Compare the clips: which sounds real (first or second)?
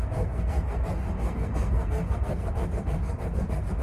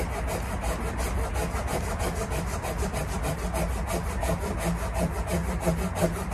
second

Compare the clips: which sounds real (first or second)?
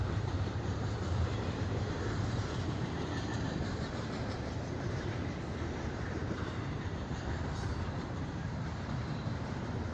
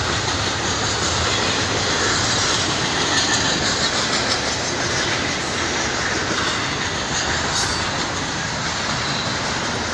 second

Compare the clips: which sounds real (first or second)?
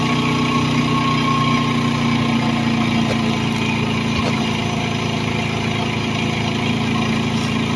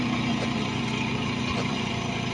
first